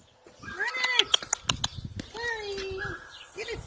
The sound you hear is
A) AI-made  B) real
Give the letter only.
B